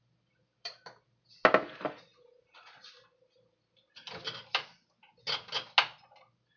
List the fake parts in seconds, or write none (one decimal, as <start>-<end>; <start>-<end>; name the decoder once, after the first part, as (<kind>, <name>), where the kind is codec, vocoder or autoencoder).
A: none